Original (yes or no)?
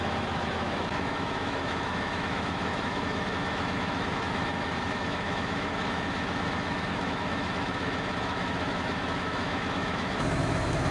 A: no